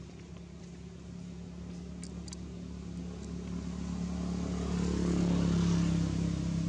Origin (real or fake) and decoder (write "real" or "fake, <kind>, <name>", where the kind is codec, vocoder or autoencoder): real